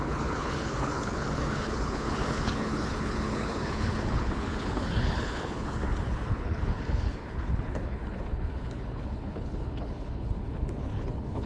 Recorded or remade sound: remade